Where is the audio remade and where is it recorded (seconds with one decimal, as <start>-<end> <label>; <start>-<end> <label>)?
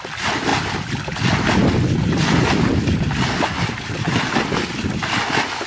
0.0-5.7 recorded